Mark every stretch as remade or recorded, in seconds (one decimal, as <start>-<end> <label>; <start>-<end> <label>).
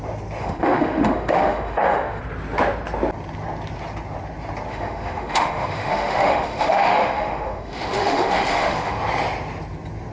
0.0-0.4 recorded; 0.4-2.2 remade; 2.2-4.7 recorded; 4.7-9.0 remade; 9.0-10.1 recorded